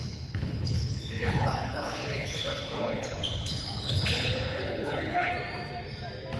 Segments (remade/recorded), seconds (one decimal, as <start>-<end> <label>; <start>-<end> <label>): 0.0-5.3 remade; 5.3-6.4 recorded